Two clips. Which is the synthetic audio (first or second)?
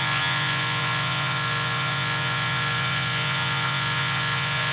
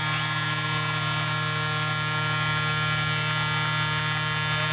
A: first